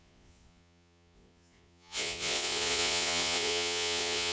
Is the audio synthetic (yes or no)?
yes